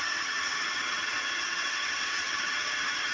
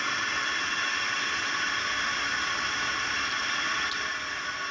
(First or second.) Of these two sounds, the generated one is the first